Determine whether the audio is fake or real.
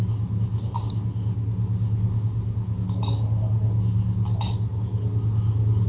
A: real